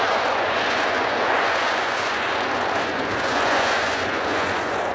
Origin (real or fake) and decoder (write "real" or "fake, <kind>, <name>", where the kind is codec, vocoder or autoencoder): fake, vocoder, Vocos